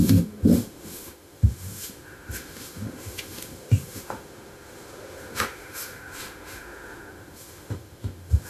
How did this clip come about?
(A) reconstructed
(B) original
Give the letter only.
A